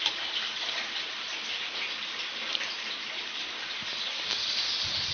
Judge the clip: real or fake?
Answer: fake